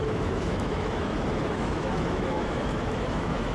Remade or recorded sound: remade